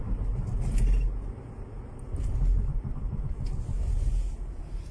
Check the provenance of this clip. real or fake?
real